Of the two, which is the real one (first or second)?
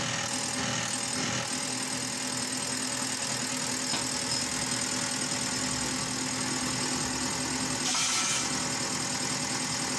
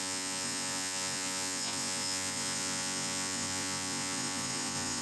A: first